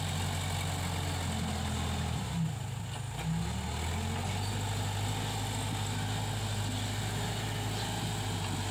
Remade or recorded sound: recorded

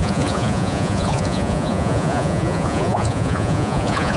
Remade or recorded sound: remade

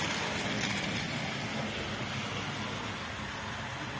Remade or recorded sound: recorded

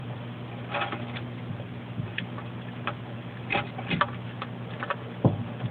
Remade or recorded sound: recorded